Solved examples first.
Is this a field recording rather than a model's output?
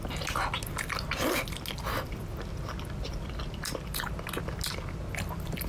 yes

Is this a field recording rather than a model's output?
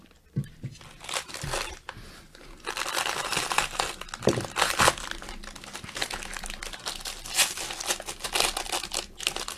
yes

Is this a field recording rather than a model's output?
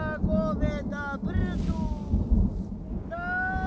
yes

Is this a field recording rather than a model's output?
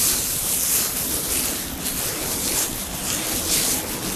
yes